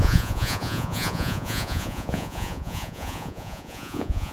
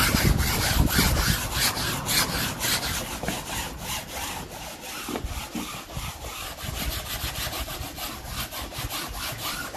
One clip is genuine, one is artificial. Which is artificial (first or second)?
first